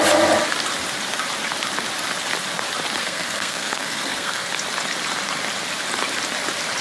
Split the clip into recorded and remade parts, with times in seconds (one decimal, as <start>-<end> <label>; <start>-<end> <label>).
0.0-3.0 recorded; 3.0-4.5 remade; 4.5-6.8 recorded